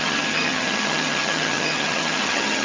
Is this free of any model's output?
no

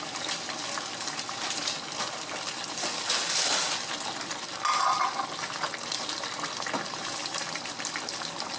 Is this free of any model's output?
yes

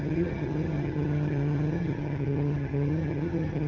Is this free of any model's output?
no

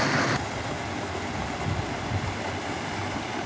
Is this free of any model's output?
yes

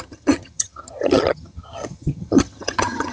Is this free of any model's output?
no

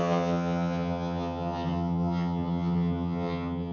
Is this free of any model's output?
no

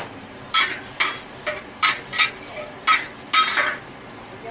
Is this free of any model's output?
yes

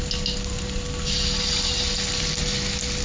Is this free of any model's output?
yes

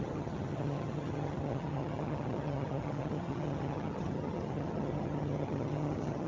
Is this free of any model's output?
no